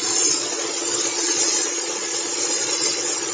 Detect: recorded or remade remade